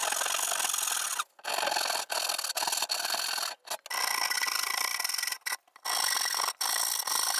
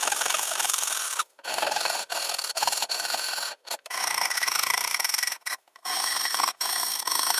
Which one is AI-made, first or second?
second